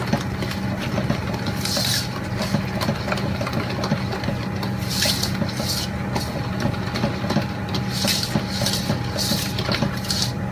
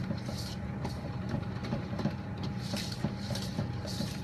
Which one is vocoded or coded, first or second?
second